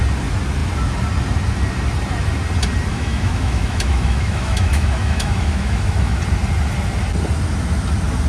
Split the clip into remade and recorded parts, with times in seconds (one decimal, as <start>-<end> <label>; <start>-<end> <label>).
0.0-2.9 recorded; 2.9-6.2 remade; 6.2-8.3 recorded